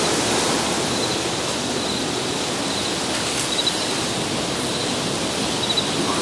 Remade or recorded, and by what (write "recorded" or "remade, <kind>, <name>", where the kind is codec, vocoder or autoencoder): recorded